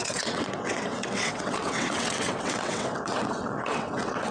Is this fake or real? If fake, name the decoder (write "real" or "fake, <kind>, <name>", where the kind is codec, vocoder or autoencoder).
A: fake, vocoder, WaveNeXt